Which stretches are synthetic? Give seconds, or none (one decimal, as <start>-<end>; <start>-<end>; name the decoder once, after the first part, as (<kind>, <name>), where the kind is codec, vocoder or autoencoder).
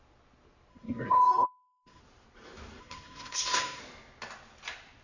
0.7-2.0 (codec, SNAC); 2.8-3.8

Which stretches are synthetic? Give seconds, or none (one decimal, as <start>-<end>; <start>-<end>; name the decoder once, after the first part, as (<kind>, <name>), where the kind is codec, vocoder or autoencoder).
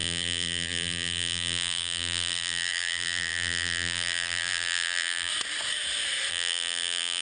0.0-5.3 (vocoder, BigVGAN v2); 6.3-7.2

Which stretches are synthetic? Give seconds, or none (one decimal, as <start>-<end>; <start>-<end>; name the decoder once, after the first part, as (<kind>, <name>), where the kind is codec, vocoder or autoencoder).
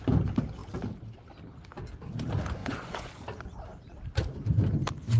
2.6-3.1 (vocoder, Vocos)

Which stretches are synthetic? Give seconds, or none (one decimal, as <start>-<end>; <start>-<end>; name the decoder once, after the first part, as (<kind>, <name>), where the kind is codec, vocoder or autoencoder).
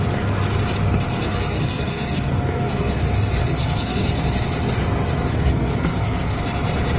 1.2-3.0 (codec, SNAC); 3.4-4.2; 5.3-6.4